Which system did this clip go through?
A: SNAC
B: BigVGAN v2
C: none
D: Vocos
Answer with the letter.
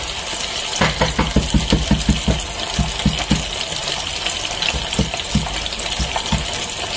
C